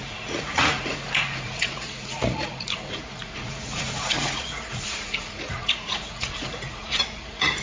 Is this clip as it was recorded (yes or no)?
no